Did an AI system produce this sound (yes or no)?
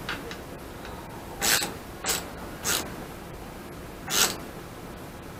no